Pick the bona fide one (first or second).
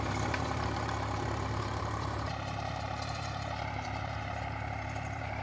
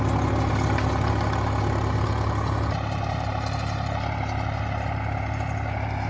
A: second